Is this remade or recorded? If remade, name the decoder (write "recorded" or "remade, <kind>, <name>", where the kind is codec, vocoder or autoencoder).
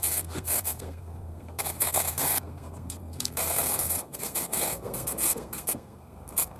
remade, codec, SNAC